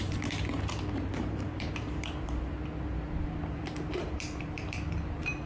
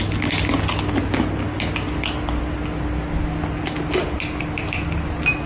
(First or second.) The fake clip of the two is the first